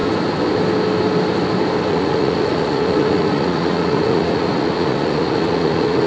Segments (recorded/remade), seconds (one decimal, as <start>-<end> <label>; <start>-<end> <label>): 0.0-1.9 recorded; 1.9-6.1 remade